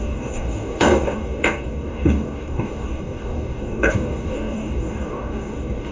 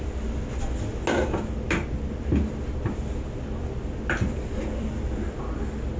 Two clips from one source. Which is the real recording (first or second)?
second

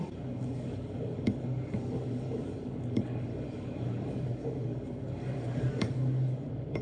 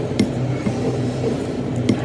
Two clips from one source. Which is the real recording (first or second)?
second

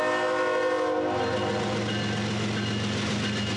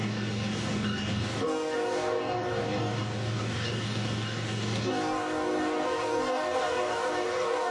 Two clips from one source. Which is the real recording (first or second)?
first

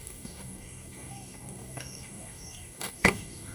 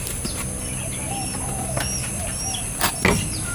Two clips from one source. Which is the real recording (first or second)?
second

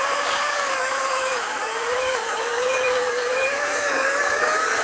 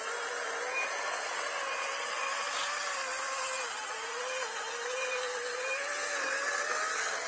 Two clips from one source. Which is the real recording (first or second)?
second